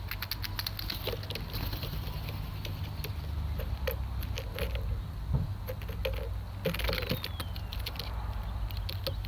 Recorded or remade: recorded